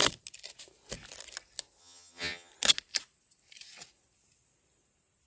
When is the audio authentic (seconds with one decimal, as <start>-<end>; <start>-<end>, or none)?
0.0-1.8; 2.5-5.3